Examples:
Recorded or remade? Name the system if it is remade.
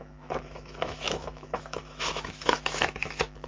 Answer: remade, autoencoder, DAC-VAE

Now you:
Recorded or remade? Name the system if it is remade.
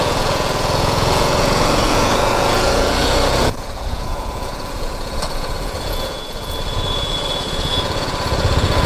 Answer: remade, vocoder, Vocos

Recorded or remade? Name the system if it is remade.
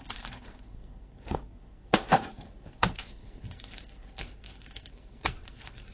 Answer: remade, codec, SNAC